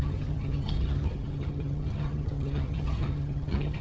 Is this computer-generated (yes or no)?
yes